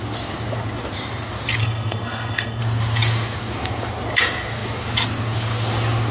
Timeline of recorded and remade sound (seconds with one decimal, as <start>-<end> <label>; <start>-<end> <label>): 0.0-1.6 recorded; 1.6-2.6 remade; 2.6-6.1 recorded